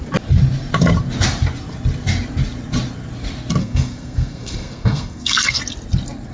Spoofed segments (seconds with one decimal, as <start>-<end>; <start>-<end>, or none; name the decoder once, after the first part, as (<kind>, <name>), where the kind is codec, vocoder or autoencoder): 3.6-5.6 (codec, SNAC)